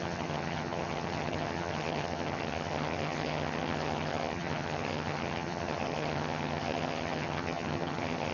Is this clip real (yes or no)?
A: no